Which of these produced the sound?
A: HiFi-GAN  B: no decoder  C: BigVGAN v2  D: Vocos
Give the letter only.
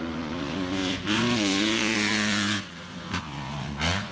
D